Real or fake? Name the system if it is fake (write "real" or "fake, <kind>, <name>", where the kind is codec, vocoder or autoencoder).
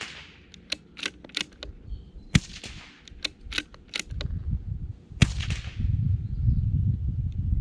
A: real